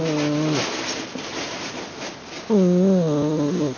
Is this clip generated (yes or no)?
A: no